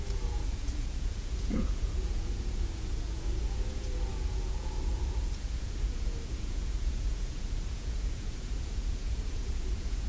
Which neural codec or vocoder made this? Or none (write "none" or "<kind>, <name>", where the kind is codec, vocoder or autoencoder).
vocoder, Vocos